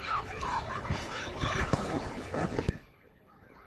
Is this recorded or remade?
remade